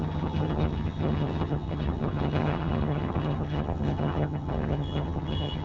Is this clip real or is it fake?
fake